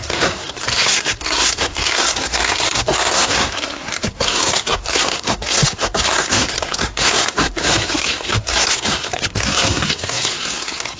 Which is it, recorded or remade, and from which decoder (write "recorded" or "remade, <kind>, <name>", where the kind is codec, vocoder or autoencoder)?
remade, codec, SNAC